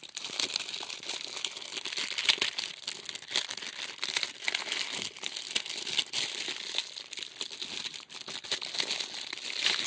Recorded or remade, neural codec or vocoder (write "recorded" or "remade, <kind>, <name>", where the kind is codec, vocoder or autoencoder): recorded